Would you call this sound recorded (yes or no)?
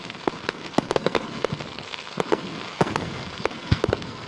no